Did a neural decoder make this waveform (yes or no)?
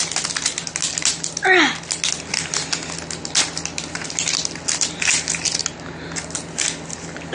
no